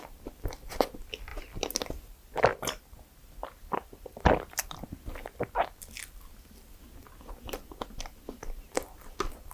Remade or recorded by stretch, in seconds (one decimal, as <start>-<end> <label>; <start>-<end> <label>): 0.0-9.5 recorded